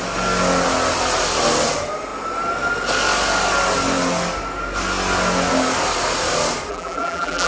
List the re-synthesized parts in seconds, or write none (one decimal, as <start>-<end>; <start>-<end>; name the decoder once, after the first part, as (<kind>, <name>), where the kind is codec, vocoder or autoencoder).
6.7-7.5 (vocoder, BigVGAN v2)